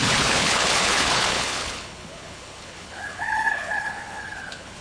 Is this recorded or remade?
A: remade